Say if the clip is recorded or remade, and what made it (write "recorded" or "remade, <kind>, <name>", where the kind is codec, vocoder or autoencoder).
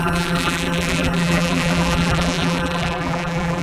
remade, vocoder, BigVGAN v2